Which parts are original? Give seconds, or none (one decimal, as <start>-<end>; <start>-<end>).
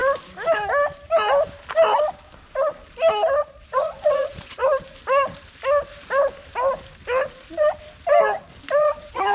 0.0-3.4; 4.6-8.8